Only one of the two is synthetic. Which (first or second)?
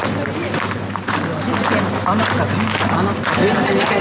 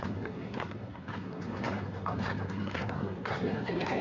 second